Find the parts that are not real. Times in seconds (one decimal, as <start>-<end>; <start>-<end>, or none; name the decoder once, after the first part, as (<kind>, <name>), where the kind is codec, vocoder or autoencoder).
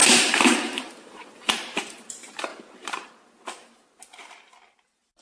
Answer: 0.0-1.5 (vocoder, BigVGAN v2); 2.5-3.1